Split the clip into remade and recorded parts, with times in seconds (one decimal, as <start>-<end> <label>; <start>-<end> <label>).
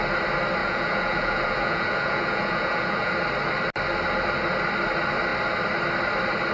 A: 0.0-0.6 recorded; 0.6-3.1 remade; 3.1-6.5 recorded